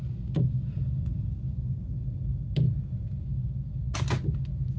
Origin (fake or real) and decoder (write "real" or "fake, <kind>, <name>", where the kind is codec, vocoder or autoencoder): real